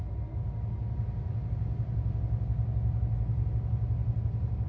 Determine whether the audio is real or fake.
real